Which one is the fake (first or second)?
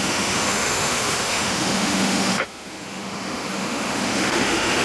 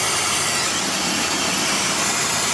first